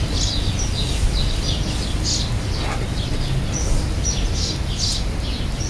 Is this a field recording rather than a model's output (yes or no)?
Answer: yes